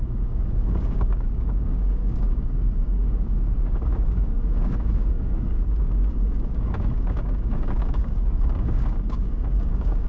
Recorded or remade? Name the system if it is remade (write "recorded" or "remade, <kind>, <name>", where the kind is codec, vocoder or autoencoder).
remade, codec, DAC